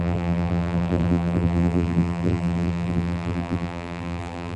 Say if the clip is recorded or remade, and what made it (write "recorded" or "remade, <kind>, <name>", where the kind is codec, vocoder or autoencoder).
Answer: remade, vocoder, BigVGAN v2